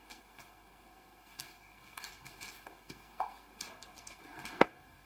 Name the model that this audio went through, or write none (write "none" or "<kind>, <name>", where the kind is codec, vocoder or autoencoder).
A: codec, SNAC